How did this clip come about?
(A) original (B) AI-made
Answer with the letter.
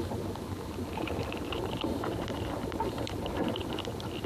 A